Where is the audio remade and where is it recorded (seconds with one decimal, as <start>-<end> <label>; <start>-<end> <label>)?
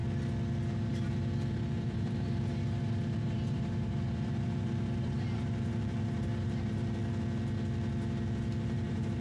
0.0-0.7 recorded; 0.7-7.0 remade; 7.0-8.6 recorded; 8.6-9.2 remade